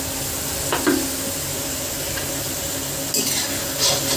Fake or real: real